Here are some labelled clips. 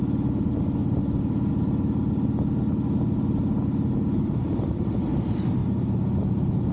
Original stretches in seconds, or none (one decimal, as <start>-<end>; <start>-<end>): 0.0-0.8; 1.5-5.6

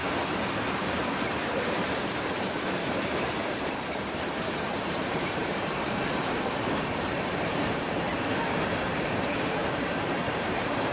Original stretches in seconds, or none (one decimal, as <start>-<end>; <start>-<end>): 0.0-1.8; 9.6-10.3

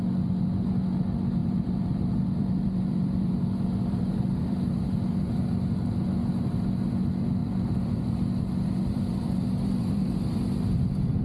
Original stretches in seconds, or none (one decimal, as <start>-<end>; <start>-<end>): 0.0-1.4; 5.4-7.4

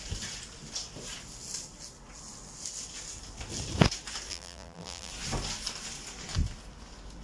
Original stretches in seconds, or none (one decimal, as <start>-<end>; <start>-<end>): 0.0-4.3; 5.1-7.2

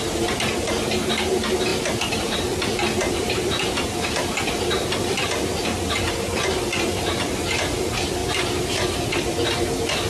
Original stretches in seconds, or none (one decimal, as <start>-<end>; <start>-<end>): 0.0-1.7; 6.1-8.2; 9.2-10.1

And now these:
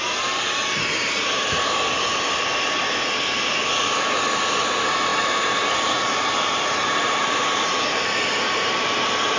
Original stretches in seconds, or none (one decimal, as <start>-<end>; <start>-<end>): 0.6-1.2; 2.1-4.6